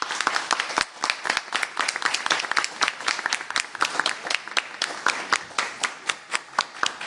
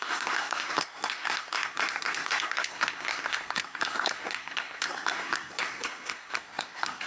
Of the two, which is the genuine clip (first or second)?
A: first